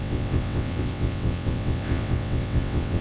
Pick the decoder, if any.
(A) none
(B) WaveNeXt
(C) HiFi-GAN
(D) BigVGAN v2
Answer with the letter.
B